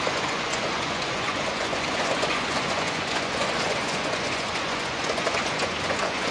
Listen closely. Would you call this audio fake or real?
fake